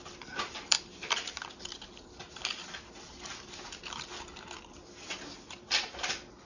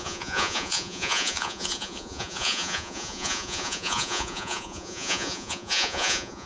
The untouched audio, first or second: first